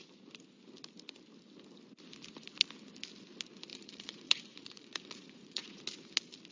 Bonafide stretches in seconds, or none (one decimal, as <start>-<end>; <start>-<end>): 0.0-3.7; 5.8-6.5